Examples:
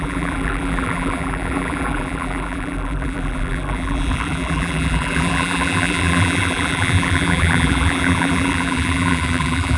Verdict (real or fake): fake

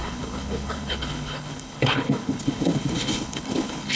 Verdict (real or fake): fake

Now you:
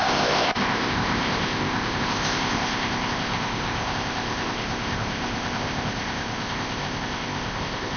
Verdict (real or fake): fake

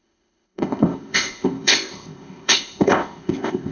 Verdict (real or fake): fake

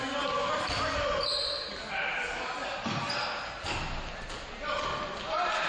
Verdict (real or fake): real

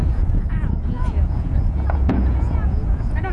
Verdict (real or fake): fake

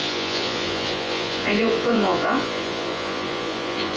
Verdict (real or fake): fake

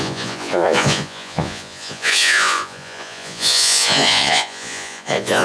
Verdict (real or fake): fake